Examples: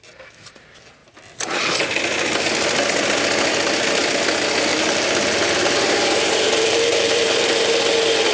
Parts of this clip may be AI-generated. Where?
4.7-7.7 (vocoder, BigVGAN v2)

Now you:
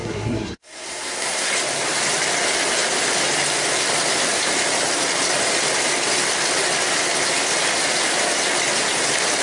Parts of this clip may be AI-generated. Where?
0.0-1.5 (codec, SNAC)

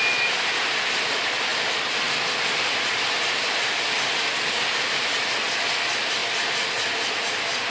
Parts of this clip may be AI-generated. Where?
none

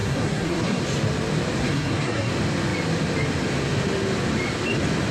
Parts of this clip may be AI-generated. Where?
0.0-0.8 (codec, SNAC); 1.6-2.3